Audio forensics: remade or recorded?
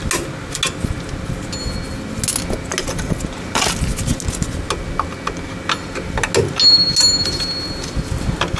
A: recorded